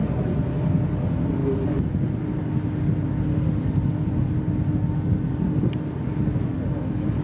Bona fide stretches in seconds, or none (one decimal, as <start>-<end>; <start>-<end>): 0.0-7.2